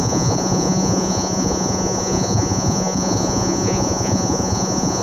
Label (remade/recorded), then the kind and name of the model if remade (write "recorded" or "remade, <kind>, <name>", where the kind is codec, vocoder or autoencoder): remade, vocoder, Vocos